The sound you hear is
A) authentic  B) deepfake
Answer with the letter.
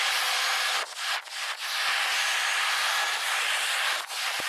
A